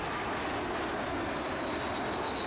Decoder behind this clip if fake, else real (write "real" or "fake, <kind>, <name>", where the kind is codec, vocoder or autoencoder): real